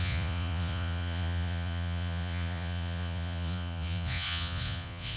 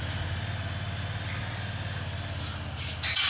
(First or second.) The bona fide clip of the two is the second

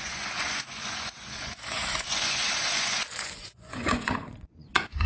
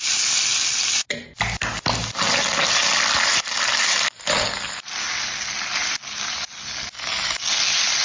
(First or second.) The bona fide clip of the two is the second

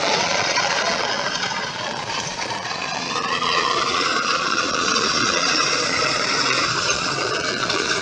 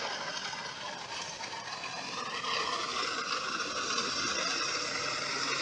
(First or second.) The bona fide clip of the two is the second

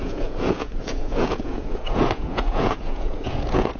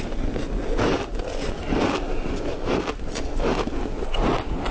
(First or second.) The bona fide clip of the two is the second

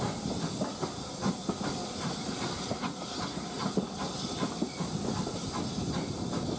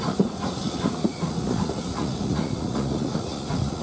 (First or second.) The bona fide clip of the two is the first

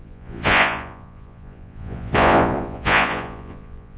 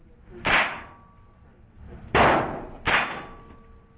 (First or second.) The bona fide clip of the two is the second